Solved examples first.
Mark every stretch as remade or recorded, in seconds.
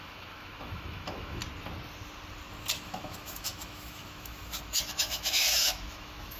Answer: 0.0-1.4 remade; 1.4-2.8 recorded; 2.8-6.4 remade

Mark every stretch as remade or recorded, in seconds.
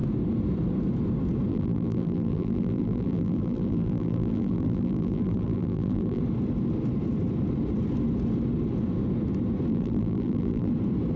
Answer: 0.0-1.5 recorded; 1.5-6.2 remade; 6.2-9.7 recorded; 9.7-10.7 remade; 10.7-11.2 recorded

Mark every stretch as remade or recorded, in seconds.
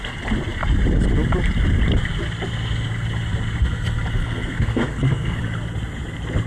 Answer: 0.0-4.2 recorded; 4.2-5.4 remade; 5.4-6.5 recorded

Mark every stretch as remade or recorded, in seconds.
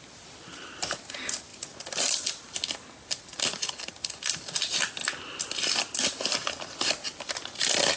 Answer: 0.0-8.0 recorded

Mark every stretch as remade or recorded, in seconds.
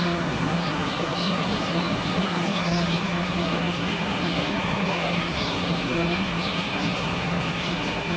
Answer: 0.0-8.2 remade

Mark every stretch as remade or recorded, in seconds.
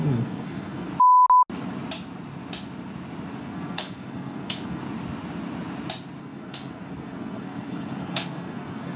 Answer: 0.0-0.9 remade; 0.9-3.4 recorded; 3.4-4.8 remade; 4.8-6.2 recorded; 6.2-9.0 remade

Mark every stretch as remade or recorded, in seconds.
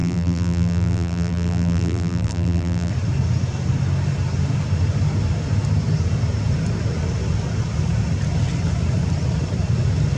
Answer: 0.0-2.9 remade; 2.9-10.2 recorded